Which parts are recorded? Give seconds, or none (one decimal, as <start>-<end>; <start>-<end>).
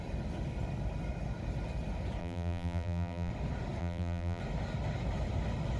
0.0-2.2; 3.3-3.8; 4.4-5.8